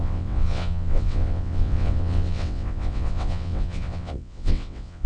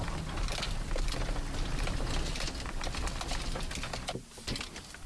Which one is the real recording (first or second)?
second